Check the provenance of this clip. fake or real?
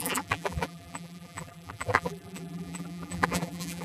fake